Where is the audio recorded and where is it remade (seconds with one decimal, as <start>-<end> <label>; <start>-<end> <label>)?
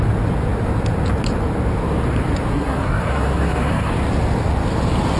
0.0-2.5 recorded; 2.5-3.9 remade; 3.9-5.2 recorded